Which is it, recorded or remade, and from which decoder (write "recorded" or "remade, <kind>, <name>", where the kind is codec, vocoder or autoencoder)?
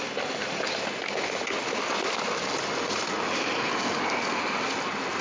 recorded